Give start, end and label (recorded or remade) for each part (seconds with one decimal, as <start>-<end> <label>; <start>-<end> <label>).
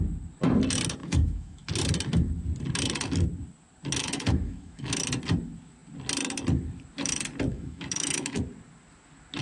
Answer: 0.0-1.0 recorded; 1.0-1.7 remade; 1.7-4.0 recorded; 4.0-5.0 remade; 5.0-7.5 recorded; 7.5-8.4 remade; 8.4-9.4 recorded